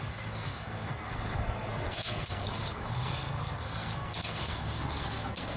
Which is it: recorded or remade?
remade